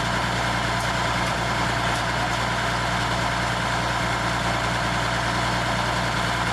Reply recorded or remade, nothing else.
recorded